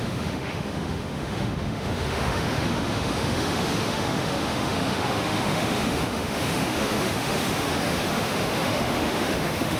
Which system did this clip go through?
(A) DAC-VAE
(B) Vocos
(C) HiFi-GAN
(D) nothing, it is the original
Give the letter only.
A